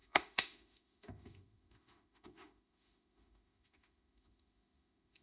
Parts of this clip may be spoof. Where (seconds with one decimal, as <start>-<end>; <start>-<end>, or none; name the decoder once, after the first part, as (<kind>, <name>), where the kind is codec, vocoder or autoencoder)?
0.0-5.2 (autoencoder, DAC-VAE)